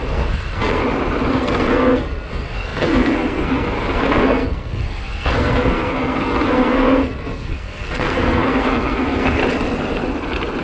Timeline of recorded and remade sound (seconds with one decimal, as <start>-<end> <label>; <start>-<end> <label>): 0.0-0.8 remade; 0.8-1.3 recorded; 1.3-9.4 remade; 9.4-10.6 recorded